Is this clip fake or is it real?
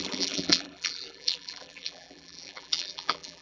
fake